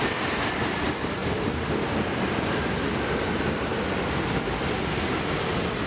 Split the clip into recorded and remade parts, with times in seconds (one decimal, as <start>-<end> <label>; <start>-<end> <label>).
0.0-3.7 remade; 3.7-5.3 recorded; 5.3-5.9 remade